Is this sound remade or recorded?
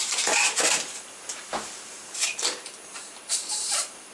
remade